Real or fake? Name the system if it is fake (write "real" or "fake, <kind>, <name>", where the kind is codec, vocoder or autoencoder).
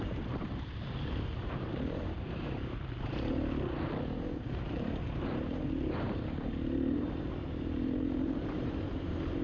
fake, vocoder, BigVGAN v2